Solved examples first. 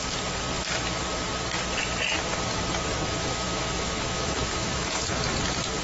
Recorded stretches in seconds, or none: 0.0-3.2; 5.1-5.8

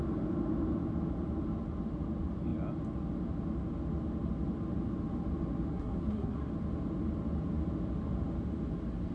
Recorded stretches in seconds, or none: 0.0-5.7; 6.5-9.1

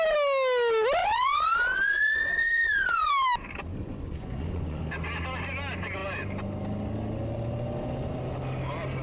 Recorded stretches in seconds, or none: 0.0-1.0; 3.1-3.7; 4.8-9.0

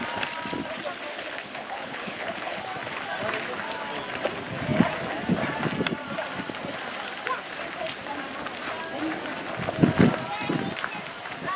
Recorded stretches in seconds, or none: 0.0-1.1; 2.6-11.6